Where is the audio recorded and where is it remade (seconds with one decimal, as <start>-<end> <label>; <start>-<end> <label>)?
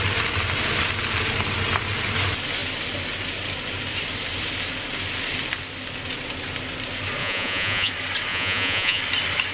0.0-7.2 recorded; 7.2-7.9 remade; 7.9-8.3 recorded; 8.3-9.0 remade; 9.0-9.5 recorded